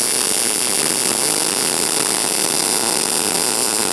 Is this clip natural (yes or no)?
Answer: yes